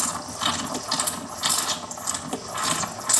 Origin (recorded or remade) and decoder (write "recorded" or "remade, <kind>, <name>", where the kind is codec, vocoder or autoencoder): recorded